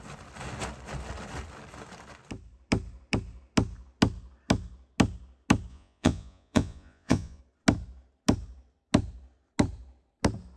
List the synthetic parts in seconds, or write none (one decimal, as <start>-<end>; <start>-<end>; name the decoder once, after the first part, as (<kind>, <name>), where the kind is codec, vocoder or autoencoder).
5.7-7.4 (vocoder, Vocos)